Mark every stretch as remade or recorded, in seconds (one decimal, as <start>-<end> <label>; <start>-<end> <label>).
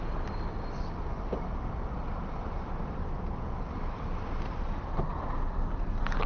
0.0-6.3 recorded